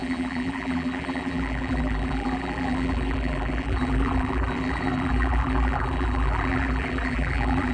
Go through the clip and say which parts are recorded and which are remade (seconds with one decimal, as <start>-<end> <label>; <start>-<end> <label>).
0.0-7.7 remade